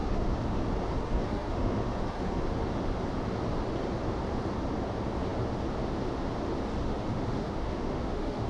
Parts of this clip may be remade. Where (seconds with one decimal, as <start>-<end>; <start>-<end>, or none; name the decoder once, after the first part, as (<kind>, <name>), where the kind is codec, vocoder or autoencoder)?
0.0-0.6 (autoencoder, DAC-VAE); 1.0-2.4; 6.8-8.5